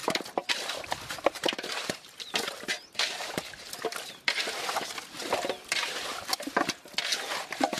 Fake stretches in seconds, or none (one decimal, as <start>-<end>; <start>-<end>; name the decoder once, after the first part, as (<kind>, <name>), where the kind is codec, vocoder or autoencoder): 0.0-3.3 (vocoder, BigVGAN v2)